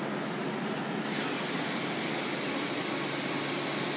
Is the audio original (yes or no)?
yes